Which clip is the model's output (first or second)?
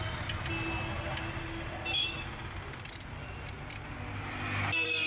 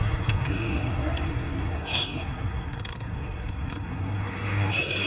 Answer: second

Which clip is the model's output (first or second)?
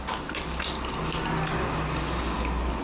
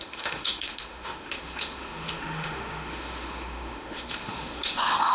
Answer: second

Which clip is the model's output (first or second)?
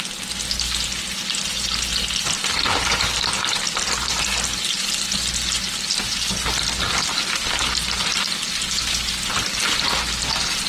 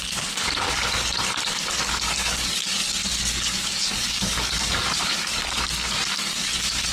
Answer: second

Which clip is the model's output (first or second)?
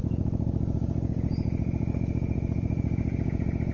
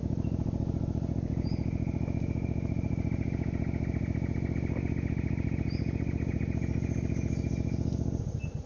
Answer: first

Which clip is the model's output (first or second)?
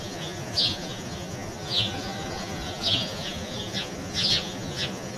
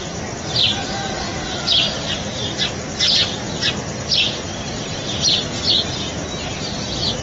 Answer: first